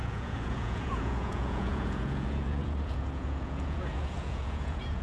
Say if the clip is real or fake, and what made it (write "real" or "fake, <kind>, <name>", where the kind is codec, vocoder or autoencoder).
fake, vocoder, Vocos